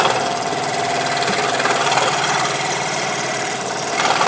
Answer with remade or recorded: remade